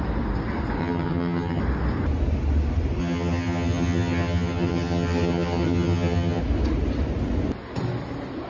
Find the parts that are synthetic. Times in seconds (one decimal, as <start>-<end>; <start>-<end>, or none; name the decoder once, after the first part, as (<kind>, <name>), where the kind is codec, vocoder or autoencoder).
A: 0.8-1.6 (vocoder, HiFi-GAN); 3.0-6.4